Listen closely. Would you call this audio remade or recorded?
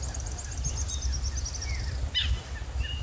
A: recorded